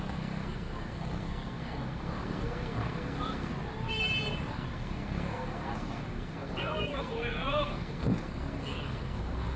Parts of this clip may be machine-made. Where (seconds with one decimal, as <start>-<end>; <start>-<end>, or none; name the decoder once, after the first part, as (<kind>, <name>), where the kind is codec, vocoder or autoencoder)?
0.0-3.5 (codec, SNAC); 4.5-9.6